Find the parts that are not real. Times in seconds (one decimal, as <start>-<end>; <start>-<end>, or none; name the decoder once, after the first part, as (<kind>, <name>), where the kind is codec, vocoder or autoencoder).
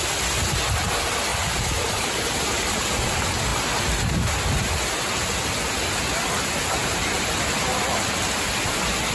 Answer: 1.3-3.1 (vocoder, BigVGAN v2); 6.8-7.3